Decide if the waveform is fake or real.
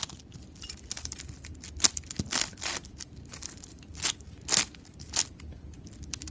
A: real